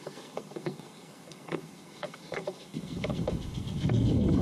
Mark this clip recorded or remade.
remade